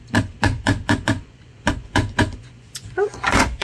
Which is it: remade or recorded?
remade